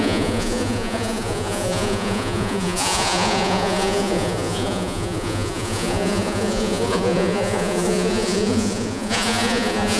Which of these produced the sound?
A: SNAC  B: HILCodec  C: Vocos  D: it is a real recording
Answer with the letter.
C